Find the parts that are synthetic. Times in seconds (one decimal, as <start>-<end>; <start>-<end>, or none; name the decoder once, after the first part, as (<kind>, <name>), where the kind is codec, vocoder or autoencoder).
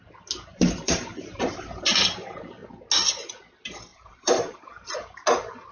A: 0.5-1.8 (vocoder, BigVGAN v2); 3.9-4.6